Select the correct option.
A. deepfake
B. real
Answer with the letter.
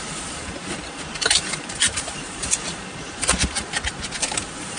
A